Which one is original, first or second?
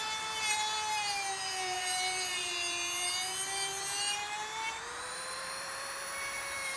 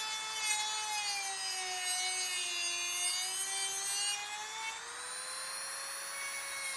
second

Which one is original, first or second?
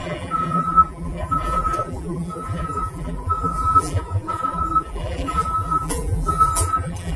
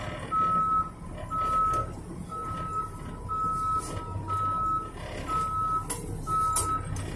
second